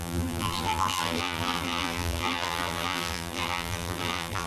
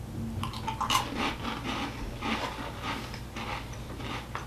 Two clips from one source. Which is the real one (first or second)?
second